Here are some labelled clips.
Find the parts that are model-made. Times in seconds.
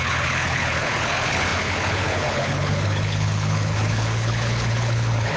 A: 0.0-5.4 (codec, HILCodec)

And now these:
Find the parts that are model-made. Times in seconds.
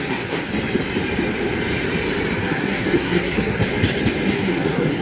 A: 0.0-0.5 (codec, SNAC); 2.4-3.6; 4.3-5.0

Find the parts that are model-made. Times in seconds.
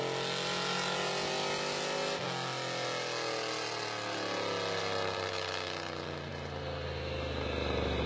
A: none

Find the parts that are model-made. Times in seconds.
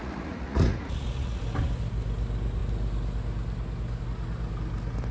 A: 0.0-1.4 (vocoder, Vocos)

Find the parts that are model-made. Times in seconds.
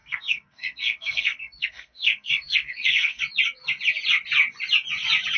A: 0.0-3.2 (codec, SNAC)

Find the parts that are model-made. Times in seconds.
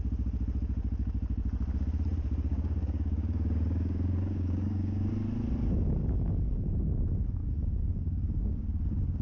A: 2.5-5.1 (codec, DAC); 7.4-9.2